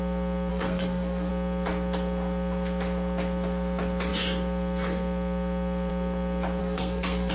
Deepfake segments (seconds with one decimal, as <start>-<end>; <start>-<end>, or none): 0.5-1.3; 6.6-7.3